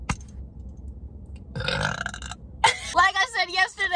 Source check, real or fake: real